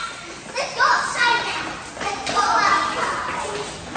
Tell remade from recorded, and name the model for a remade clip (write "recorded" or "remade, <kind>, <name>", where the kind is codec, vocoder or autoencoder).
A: recorded